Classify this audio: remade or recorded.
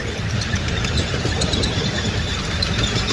remade